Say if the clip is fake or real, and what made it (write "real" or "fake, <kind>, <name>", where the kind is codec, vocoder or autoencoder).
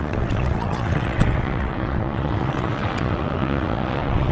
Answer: fake, vocoder, WaveNeXt